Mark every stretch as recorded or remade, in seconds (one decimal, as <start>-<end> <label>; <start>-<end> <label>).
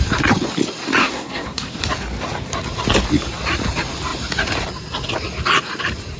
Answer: 0.0-1.0 recorded; 1.0-1.8 remade; 1.8-6.2 recorded